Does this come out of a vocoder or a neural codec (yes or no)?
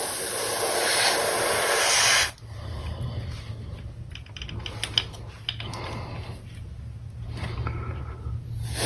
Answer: no